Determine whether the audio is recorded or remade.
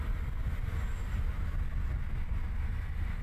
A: recorded